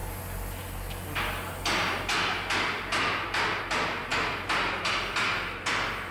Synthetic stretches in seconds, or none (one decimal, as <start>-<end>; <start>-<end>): none